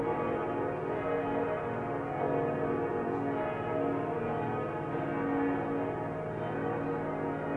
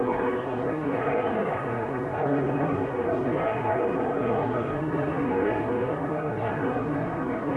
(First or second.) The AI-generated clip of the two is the second